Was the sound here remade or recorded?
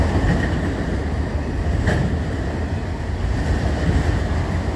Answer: recorded